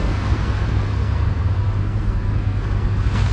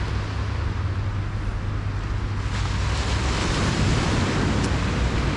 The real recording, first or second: second